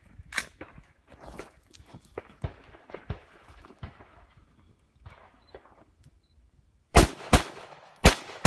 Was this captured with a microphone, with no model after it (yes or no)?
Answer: no